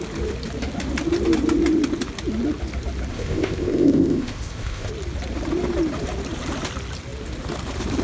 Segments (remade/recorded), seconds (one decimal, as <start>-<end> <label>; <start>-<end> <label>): 0.0-3.1 recorded; 3.1-4.9 remade; 4.9-8.0 recorded